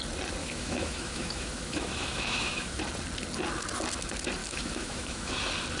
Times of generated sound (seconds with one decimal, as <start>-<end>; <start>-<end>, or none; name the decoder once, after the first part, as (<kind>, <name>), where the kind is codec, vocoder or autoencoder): 0.4-2.8 (autoencoder, DAC-VAE); 4.4-5.3